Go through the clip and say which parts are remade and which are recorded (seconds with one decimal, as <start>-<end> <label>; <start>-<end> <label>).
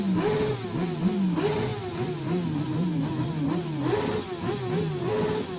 0.0-5.6 recorded